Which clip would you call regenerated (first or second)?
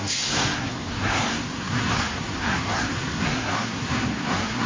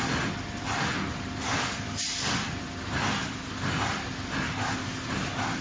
first